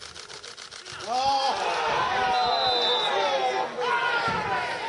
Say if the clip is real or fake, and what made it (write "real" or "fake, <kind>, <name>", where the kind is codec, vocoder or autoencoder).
real